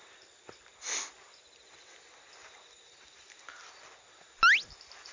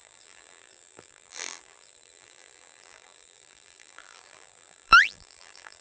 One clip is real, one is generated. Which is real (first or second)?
first